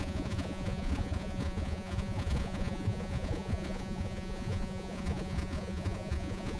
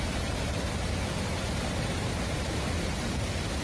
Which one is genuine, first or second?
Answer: second